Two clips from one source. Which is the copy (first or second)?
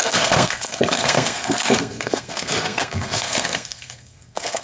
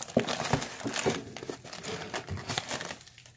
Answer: first